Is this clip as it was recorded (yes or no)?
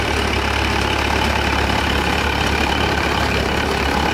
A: no